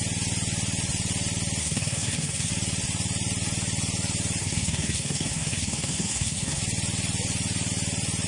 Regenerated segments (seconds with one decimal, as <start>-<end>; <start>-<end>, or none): 1.6-2.5; 4.4-6.6